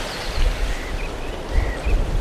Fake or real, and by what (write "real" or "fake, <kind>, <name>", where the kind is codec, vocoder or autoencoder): real